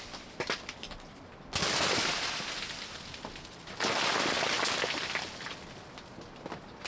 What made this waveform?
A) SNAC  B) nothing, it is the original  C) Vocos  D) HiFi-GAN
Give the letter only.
B